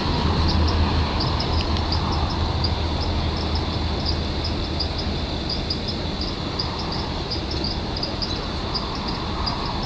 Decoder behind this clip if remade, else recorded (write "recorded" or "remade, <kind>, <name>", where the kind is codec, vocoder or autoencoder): recorded